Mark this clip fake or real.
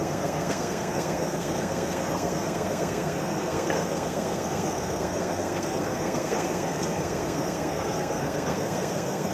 fake